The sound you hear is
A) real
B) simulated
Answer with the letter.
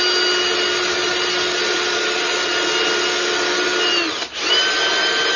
A